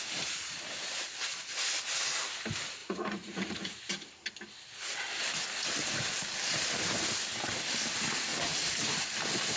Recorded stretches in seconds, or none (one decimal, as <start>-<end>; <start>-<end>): 0.0-2.8; 3.9-8.3; 9.0-9.6